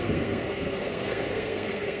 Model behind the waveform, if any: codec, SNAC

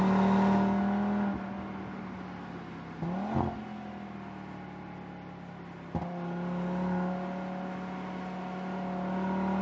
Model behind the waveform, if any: none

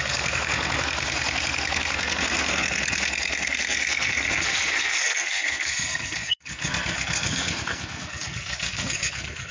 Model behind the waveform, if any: codec, SNAC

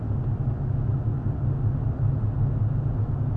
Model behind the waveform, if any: none